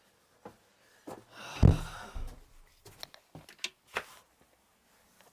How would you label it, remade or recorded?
recorded